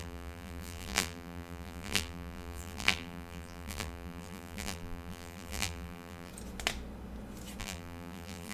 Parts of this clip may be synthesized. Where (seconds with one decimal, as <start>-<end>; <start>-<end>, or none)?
0.0-6.3; 7.6-8.5